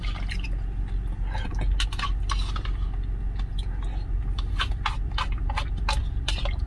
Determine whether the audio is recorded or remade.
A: recorded